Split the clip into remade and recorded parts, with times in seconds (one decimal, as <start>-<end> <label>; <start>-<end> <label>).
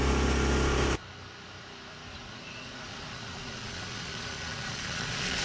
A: 0.0-2.1 recorded; 2.1-5.4 remade